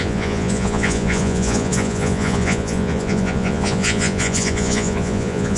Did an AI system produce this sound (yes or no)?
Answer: yes